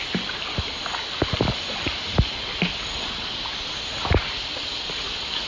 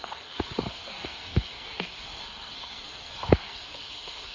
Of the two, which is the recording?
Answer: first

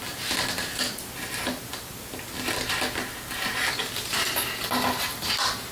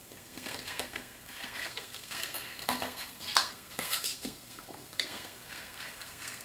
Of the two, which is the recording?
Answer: first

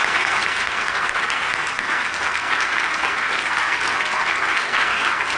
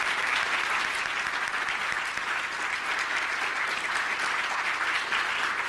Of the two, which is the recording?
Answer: second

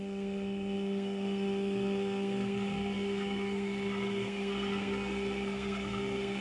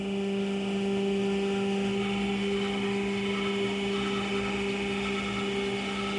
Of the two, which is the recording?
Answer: second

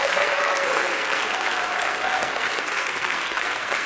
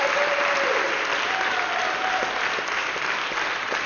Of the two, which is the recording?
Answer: second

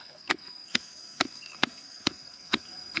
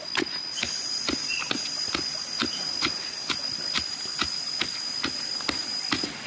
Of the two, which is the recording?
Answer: second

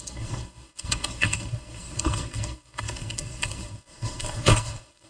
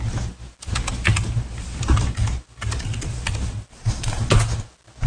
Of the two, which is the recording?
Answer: second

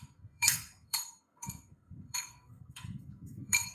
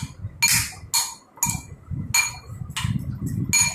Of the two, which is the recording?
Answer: second